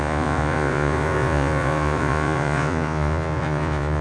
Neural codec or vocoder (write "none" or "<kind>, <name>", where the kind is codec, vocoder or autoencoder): vocoder, Vocos